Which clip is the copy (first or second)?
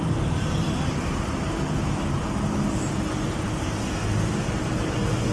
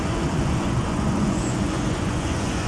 second